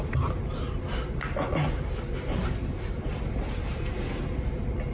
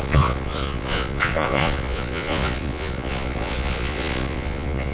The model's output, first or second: second